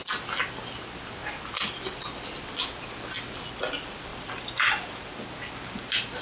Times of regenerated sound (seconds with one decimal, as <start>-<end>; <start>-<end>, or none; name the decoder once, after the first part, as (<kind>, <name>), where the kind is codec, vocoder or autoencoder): 4.1-5.0 (vocoder, BigVGAN v2)